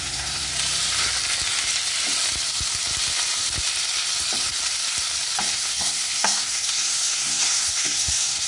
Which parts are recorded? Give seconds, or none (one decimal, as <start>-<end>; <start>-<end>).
0.5-5.4